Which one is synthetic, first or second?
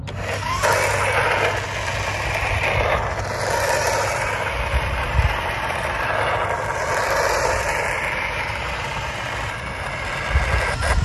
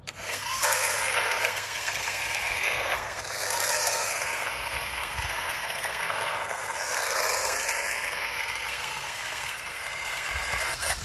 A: second